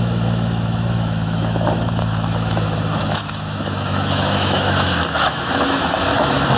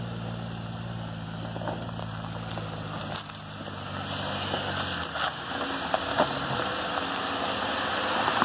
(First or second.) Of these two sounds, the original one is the second